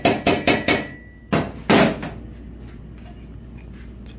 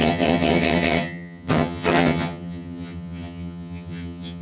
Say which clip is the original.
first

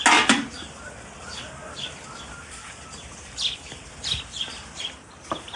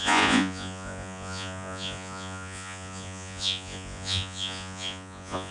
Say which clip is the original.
first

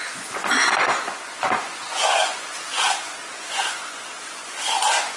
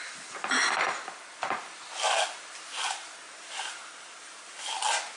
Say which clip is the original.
second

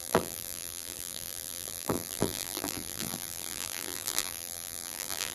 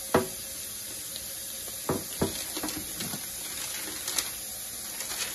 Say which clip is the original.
second